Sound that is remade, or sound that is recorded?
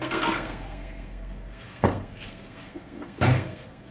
remade